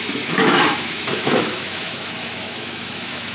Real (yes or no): no